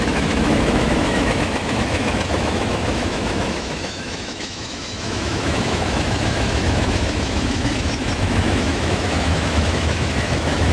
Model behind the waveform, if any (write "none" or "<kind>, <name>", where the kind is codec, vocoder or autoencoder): autoencoder, DAC-VAE